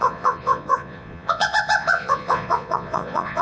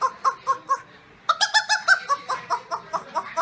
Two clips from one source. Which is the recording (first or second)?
second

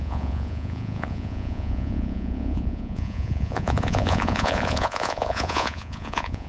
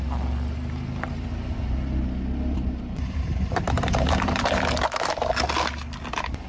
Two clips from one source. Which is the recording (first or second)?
second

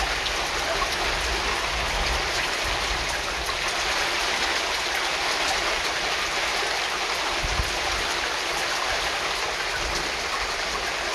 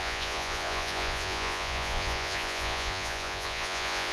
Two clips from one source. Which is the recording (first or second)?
first